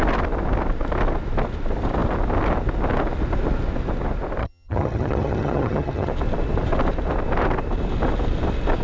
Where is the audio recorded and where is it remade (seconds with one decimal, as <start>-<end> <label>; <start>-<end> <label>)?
0.0-4.4 recorded; 4.4-6.1 remade; 6.1-8.8 recorded